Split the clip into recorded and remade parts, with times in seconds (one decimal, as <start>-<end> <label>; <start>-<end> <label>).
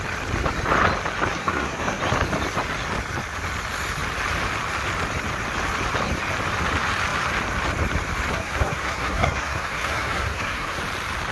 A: 0.0-1.4 recorded; 1.4-2.0 remade; 2.0-8.3 recorded; 8.3-10.8 remade; 10.8-11.3 recorded